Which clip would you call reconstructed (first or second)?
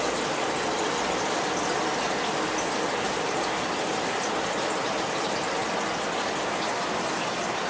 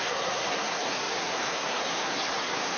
second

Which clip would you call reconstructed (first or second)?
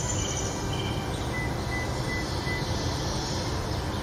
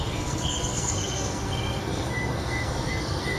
second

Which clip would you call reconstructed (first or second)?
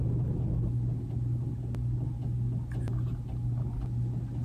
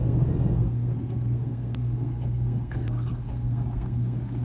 second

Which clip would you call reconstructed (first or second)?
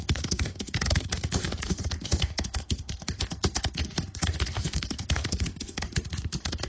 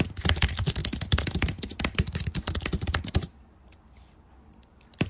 first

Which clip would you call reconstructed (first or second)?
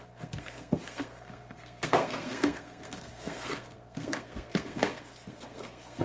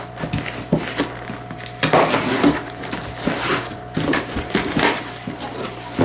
first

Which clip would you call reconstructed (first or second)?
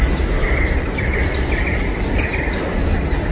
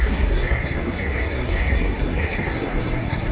second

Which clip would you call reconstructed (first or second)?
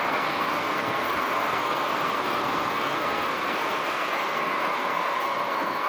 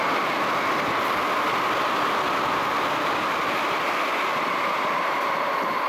first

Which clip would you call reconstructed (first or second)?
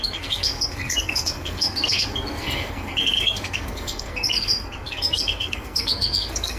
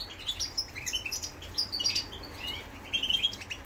first